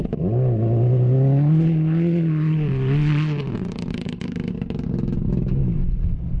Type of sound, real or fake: real